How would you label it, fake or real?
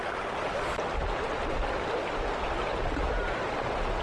real